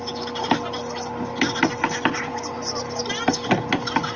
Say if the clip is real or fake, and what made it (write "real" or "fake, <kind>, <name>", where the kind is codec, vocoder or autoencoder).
real